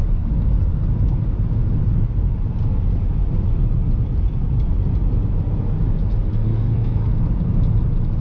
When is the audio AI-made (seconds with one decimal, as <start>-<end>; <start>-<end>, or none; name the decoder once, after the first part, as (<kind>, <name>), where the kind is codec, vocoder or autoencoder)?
6.3-7.2 (codec, SNAC)